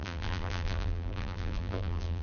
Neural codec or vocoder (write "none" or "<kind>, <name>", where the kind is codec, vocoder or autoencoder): vocoder, BigVGAN v2